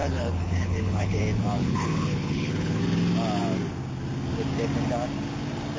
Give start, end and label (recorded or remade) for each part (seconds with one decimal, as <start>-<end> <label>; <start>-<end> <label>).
0.0-1.2 remade; 1.2-1.6 recorded; 1.6-2.8 remade; 2.8-5.8 recorded